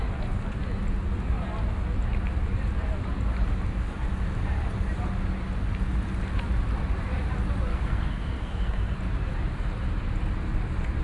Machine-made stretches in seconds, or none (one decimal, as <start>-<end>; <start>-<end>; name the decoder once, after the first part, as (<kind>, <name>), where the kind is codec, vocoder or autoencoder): 7.7-9.0 (codec, SNAC)